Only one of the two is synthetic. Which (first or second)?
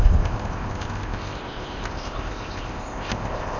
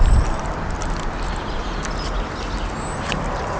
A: first